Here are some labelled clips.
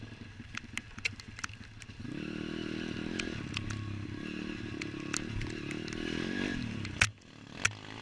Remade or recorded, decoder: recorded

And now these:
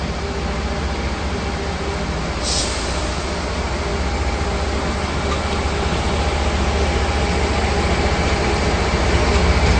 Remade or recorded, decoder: recorded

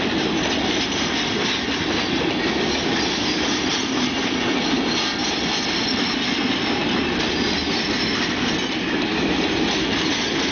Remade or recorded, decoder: recorded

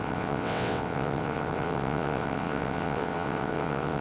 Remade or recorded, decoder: remade, vocoder, WaveNeXt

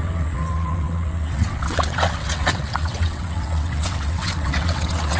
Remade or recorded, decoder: remade, vocoder, WaveNeXt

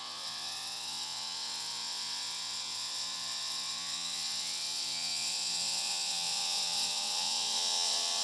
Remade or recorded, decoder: remade, vocoder, WaveNeXt